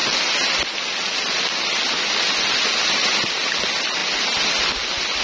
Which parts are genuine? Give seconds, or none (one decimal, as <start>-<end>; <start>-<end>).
0.0-5.2